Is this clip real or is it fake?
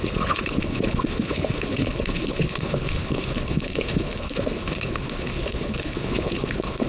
fake